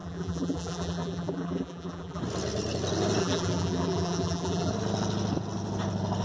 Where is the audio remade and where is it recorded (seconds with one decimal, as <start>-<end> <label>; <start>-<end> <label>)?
0.0-2.2 remade; 2.2-3.2 recorded; 3.2-4.7 remade; 4.7-6.2 recorded